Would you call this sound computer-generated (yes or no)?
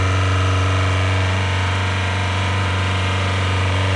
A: yes